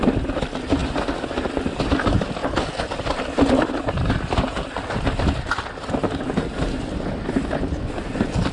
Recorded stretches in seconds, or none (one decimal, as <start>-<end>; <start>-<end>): 0.0-8.5